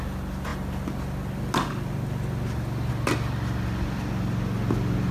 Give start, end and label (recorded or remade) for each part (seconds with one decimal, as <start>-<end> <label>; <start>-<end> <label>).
0.0-5.1 recorded